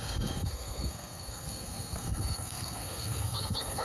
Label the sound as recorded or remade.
remade